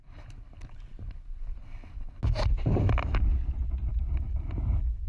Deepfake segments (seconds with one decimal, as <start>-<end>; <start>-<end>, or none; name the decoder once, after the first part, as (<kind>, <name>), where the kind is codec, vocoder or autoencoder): none